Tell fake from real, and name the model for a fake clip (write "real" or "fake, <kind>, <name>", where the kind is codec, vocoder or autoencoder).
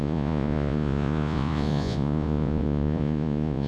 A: fake, vocoder, Vocos